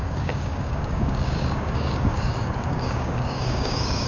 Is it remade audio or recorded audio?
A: remade